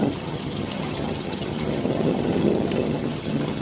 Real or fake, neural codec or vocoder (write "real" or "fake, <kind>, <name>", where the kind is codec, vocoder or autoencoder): fake, vocoder, HiFi-GAN